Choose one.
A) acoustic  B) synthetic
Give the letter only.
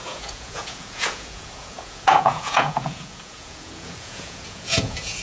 B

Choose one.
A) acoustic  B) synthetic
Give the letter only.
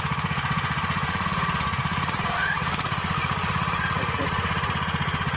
B